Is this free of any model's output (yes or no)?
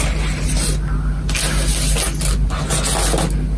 yes